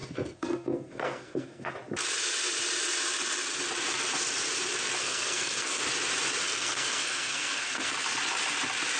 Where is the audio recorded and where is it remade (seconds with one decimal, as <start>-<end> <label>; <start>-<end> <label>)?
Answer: 0.0-1.7 remade; 1.7-5.0 recorded; 5.0-5.8 remade; 5.8-6.4 recorded; 6.4-7.9 remade; 7.9-9.0 recorded

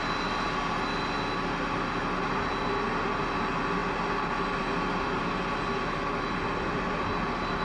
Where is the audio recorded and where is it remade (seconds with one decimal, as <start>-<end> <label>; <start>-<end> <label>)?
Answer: 0.0-7.6 recorded